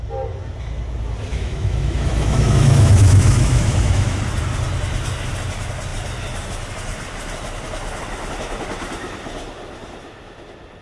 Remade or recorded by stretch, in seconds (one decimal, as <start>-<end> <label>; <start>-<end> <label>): 0.0-1.3 recorded; 1.3-4.2 remade; 4.2-10.8 recorded